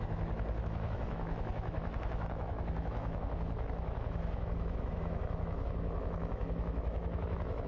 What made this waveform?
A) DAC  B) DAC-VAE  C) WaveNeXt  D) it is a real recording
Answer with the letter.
B